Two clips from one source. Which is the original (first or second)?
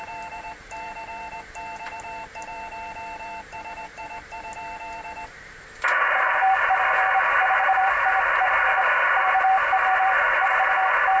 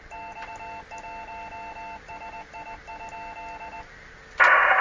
second